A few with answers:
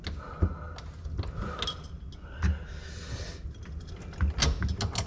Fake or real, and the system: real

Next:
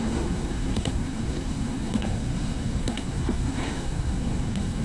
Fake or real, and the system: fake, codec, SNAC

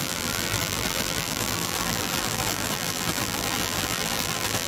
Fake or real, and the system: fake, vocoder, BigVGAN v2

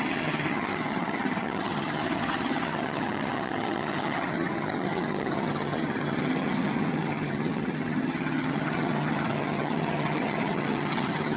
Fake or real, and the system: fake, vocoder, HiFi-GAN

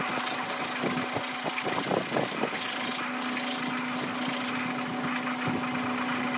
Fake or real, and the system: real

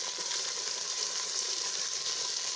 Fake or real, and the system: real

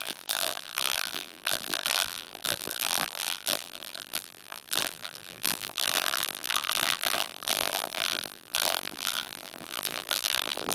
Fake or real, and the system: fake, vocoder, BigVGAN v2